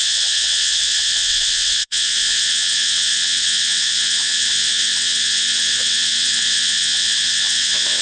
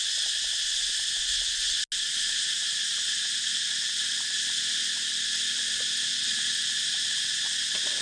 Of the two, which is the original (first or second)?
second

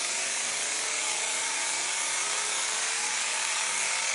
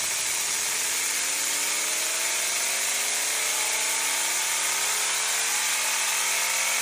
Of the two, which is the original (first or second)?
second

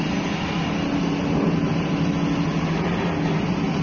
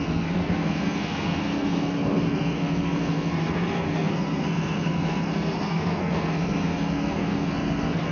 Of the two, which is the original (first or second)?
first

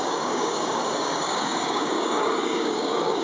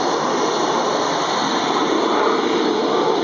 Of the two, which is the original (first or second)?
second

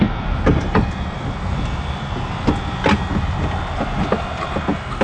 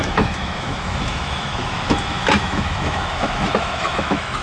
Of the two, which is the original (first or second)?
first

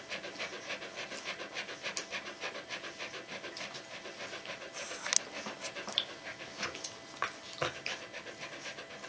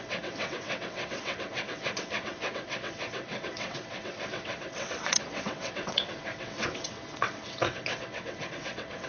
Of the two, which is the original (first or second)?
first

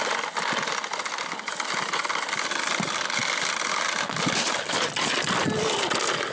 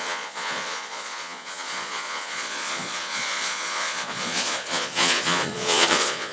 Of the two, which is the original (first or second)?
first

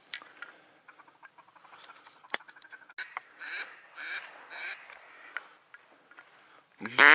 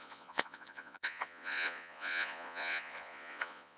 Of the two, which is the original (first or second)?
first